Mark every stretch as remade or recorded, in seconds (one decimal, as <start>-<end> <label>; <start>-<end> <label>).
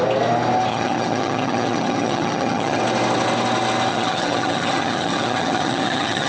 0.0-0.7 recorded; 0.7-2.8 remade; 2.8-3.9 recorded; 3.9-6.3 remade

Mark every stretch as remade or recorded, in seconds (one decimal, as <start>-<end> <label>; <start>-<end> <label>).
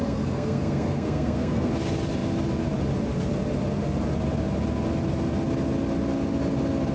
0.0-1.7 remade; 1.7-6.9 recorded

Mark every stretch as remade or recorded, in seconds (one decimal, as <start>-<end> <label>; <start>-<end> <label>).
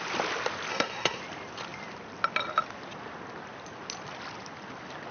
0.0-0.7 recorded; 0.7-1.2 remade; 1.2-5.1 recorded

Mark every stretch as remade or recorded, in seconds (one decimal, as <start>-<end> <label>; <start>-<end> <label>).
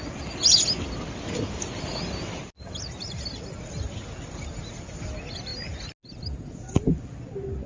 0.0-7.7 recorded